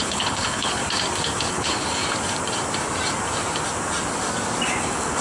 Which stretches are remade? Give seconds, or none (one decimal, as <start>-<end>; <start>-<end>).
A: 0.0-0.8; 1.5-2.0; 4.8-5.2